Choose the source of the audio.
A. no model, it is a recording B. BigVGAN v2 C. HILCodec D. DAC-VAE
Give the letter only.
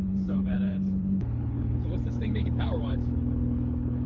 C